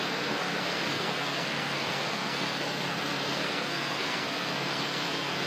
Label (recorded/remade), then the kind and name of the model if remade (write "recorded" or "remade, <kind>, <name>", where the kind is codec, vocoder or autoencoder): remade, codec, SNAC